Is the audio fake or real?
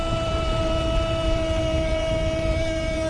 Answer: fake